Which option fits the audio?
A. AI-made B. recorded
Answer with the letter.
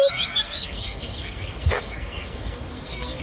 A